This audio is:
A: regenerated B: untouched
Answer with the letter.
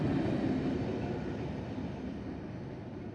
B